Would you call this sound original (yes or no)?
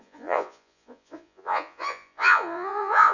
no